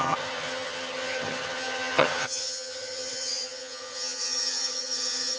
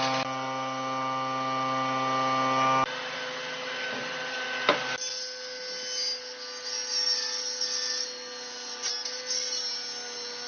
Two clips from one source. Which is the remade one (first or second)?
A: first